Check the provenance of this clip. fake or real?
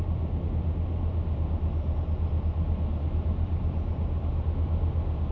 real